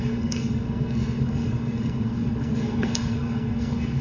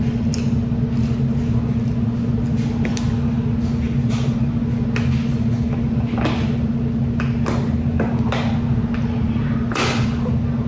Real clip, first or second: second